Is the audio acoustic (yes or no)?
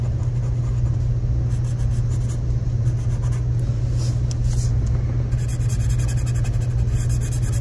yes